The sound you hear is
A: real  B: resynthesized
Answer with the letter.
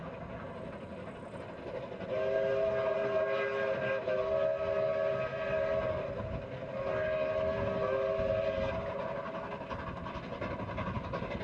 A